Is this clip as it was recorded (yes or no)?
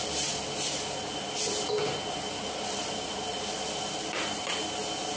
yes